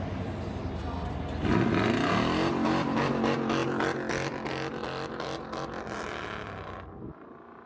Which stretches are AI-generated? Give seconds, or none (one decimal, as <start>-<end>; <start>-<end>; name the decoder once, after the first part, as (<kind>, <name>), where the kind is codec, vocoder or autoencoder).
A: none

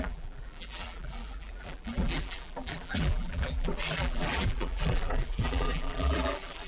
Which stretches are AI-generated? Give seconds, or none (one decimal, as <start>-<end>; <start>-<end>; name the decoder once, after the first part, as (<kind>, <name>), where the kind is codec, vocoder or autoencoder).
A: 0.0-6.7 (vocoder, BigVGAN v2)